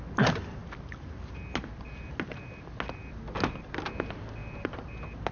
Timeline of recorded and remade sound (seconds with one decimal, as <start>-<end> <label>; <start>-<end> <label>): 0.0-5.3 recorded